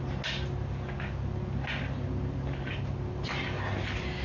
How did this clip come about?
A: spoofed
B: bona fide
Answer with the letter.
B